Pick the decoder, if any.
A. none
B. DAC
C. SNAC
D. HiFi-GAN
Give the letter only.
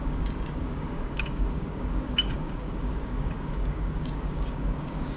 B